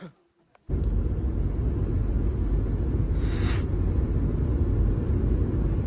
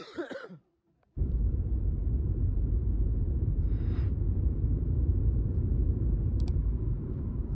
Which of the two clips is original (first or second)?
first